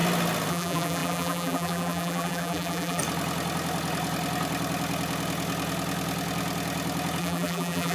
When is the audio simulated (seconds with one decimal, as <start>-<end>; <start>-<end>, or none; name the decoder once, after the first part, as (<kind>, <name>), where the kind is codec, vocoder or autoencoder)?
0.5-3.0 (vocoder, BigVGAN v2); 7.2-7.9